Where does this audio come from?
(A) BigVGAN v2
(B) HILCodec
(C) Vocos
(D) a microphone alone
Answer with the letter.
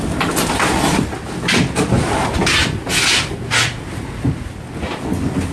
D